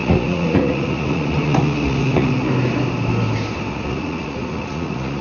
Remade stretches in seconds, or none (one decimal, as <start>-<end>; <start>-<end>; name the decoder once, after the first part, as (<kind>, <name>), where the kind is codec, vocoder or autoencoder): 0.0-2.5 (vocoder, Vocos); 3.7-5.2